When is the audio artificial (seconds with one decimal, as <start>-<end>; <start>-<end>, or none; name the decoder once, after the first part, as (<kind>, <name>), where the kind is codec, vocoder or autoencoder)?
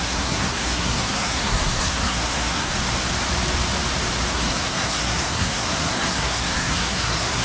0.0-2.7 (codec, SNAC); 4.3-7.4